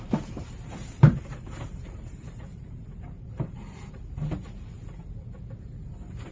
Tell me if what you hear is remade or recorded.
remade